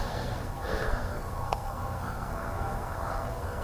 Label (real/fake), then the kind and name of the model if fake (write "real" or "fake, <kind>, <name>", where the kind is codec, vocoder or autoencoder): fake, codec, SNAC